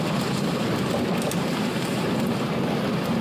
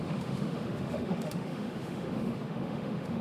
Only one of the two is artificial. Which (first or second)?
second